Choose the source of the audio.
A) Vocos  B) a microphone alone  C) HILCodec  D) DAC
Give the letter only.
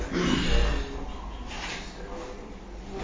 B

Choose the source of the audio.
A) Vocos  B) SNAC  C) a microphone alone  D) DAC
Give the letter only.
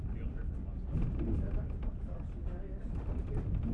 C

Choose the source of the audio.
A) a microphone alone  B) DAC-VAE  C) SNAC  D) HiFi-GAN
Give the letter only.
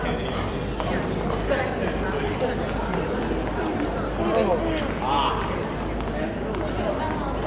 A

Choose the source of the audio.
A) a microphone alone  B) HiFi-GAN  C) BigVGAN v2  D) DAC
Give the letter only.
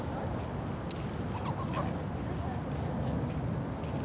A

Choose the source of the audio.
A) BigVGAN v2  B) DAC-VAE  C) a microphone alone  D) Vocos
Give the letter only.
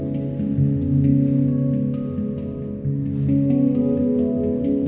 C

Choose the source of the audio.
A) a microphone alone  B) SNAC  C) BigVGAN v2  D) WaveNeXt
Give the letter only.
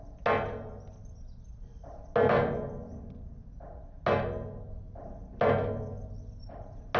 A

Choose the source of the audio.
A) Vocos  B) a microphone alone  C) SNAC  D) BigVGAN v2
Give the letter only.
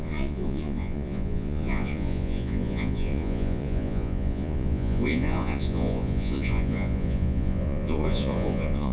A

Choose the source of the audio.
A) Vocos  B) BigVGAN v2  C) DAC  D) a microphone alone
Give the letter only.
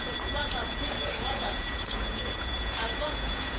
A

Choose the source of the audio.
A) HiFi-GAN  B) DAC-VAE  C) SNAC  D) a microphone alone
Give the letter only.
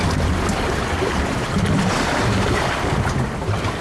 D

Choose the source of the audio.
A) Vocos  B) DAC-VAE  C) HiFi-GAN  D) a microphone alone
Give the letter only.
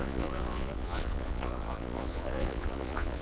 A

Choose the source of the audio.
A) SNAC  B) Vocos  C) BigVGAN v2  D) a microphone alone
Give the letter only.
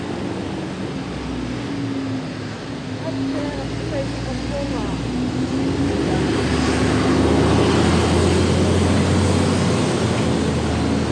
D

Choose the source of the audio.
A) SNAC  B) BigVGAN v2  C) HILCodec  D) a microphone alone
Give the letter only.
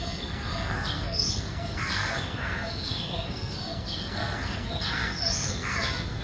A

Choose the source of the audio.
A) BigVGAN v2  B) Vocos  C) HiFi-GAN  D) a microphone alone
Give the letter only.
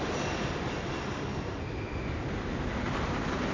D